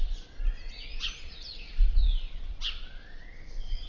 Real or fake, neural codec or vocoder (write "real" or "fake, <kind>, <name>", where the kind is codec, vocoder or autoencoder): fake, vocoder, Vocos